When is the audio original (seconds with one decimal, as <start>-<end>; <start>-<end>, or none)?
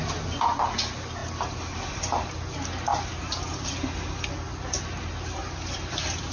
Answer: 0.0-6.3